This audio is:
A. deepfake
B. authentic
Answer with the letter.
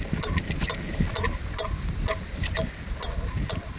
B